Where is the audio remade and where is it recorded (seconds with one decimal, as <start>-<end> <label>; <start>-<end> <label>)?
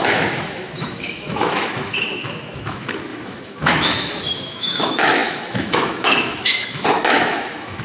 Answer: 0.0-7.8 remade